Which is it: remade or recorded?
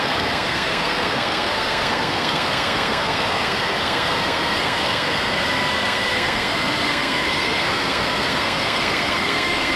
remade